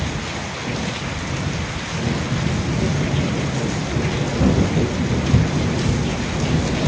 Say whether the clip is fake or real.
real